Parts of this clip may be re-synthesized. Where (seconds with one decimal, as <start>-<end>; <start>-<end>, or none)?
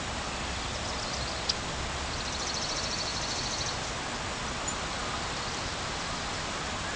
none